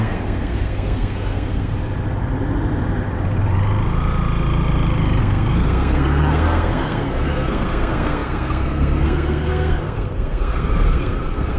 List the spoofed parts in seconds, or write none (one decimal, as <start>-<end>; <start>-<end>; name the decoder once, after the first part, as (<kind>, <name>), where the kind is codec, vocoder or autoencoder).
0.0-1.7 (codec, SNAC); 5.2-11.6